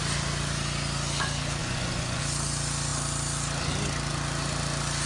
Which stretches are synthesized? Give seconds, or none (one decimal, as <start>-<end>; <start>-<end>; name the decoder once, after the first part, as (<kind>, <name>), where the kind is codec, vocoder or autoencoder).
1.6-2.2 (vocoder, Vocos)